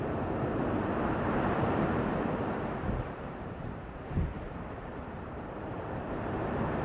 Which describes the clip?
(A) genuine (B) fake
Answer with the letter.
B